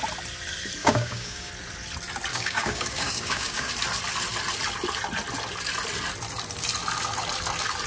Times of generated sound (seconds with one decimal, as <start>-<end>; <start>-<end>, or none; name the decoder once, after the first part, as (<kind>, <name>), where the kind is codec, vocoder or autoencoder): 0.8-1.5 (codec, DAC); 2.3-3.7